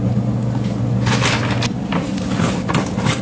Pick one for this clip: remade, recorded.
recorded